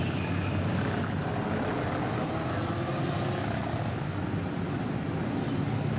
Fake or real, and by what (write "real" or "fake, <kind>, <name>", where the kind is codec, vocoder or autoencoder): real